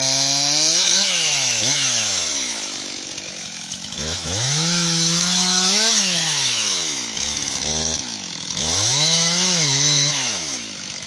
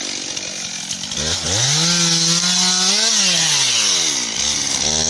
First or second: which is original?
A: second